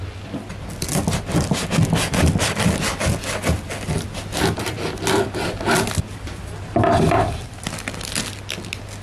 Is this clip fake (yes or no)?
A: no